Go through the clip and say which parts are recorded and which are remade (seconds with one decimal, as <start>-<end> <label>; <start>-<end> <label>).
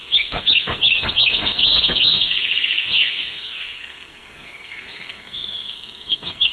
0.0-6.5 remade